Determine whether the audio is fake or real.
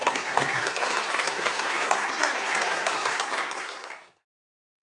fake